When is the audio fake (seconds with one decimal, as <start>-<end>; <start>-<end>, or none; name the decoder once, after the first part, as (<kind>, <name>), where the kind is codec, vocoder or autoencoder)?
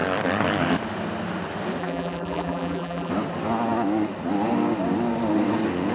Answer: 1.8-3.1 (vocoder, BigVGAN v2)